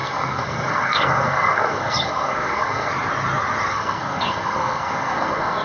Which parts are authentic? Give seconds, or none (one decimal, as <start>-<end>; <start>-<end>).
2.9-3.7